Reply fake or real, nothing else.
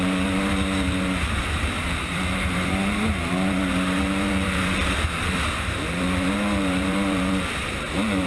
fake